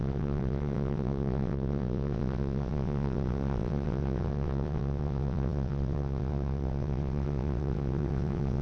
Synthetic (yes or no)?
yes